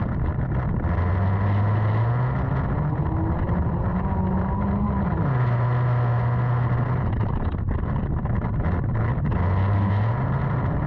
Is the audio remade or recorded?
recorded